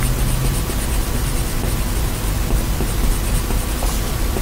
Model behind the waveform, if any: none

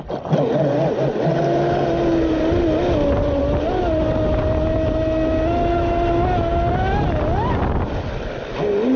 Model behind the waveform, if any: none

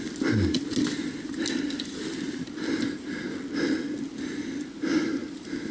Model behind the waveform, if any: none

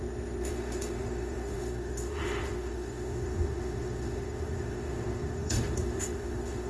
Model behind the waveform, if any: autoencoder, DAC-VAE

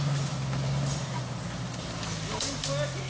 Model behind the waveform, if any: none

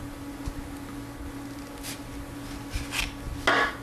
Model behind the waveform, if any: none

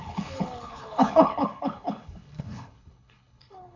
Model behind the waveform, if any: codec, HILCodec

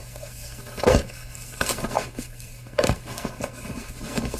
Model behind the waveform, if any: codec, SNAC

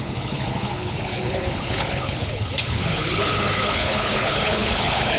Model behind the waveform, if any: codec, HILCodec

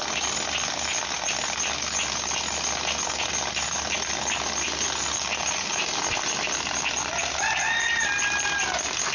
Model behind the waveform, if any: none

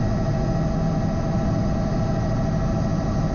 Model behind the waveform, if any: none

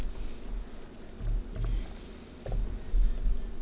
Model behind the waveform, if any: none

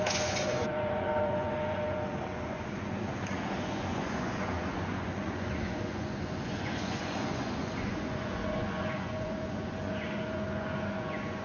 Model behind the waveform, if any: vocoder, Vocos